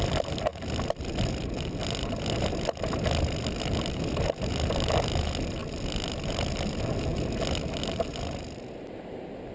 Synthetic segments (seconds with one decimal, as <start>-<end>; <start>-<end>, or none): none